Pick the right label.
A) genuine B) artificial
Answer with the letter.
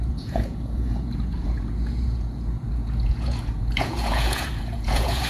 B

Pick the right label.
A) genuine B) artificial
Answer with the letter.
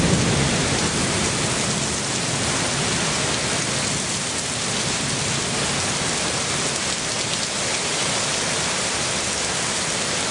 A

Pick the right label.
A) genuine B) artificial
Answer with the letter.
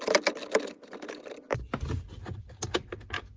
A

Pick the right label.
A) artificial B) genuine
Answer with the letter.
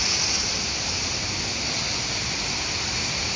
B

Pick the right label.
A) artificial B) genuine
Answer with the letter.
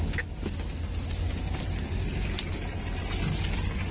B